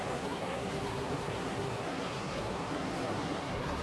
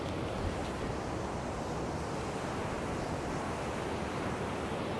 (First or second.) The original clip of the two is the second